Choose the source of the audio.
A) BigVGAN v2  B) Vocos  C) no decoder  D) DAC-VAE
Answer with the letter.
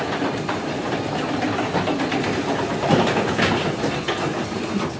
C